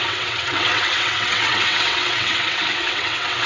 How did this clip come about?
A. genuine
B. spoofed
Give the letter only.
B